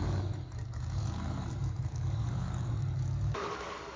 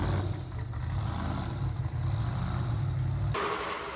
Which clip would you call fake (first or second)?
first